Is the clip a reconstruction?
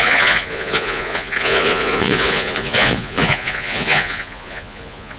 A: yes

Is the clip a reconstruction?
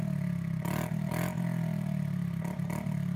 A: no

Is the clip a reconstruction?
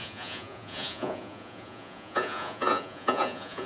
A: yes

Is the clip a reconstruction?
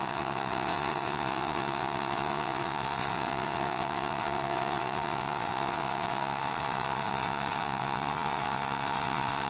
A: yes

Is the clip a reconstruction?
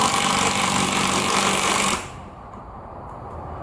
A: yes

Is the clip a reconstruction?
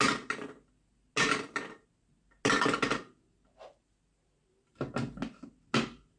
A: no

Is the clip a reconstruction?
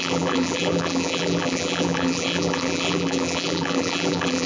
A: yes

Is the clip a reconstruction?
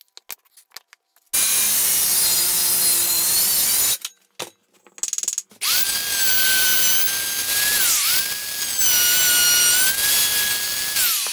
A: no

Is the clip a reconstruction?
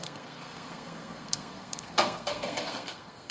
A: yes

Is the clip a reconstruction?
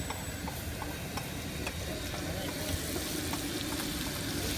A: no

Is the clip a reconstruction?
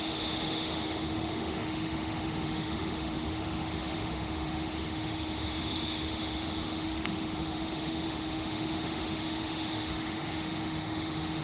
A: yes